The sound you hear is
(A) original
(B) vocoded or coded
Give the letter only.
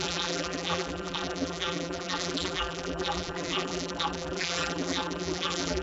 B